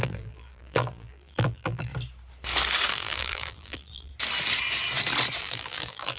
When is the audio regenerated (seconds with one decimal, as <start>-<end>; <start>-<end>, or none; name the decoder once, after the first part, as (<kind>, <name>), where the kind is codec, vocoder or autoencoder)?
0.0-1.9 (vocoder, BigVGAN v2); 2.9-4.1; 5.4-6.2